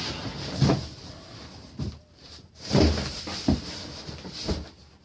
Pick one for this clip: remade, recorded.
recorded